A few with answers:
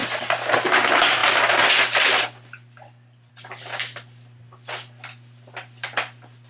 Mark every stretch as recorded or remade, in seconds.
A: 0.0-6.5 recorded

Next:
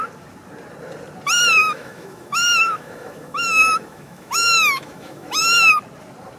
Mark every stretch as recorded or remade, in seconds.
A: 0.0-1.6 recorded; 1.6-5.4 remade; 5.4-6.4 recorded

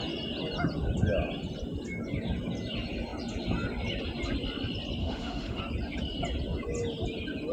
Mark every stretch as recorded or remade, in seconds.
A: 0.0-5.0 recorded; 5.0-5.6 remade; 5.6-7.5 recorded

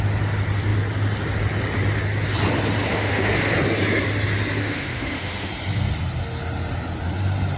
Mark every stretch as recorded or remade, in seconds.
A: 0.0-2.9 recorded; 2.9-3.5 remade; 3.5-4.6 recorded; 4.6-5.5 remade; 5.5-7.6 recorded

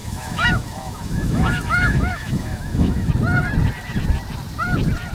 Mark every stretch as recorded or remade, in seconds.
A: 0.0-3.1 remade; 3.1-5.1 recorded

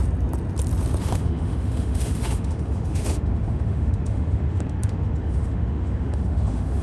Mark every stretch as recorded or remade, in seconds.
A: 0.0-1.0 recorded; 1.0-6.8 remade

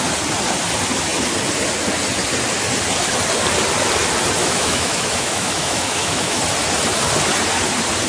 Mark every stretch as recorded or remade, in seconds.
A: 0.0-4.4 recorded; 4.4-6.4 remade; 6.4-8.1 recorded

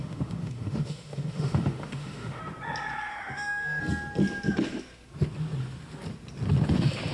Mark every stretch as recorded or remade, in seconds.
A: 0.0-2.4 remade; 2.4-3.1 recorded; 3.1-3.8 remade; 3.8-7.1 recorded